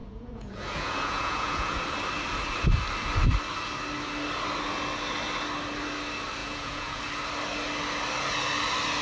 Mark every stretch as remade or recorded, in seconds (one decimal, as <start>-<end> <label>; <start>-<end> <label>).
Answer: 0.0-1.8 remade; 1.8-6.4 recorded; 6.4-7.0 remade; 7.0-9.0 recorded